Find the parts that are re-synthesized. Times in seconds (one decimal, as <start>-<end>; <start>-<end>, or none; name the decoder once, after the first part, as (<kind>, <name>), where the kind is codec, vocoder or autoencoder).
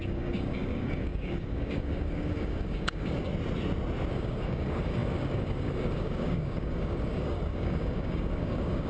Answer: 0.0-3.3 (codec, DAC); 4.1-8.9